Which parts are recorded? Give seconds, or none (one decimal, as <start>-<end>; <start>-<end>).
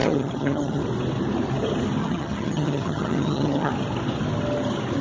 0.8-2.0; 3.7-5.0